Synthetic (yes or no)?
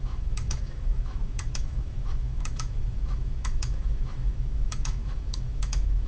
yes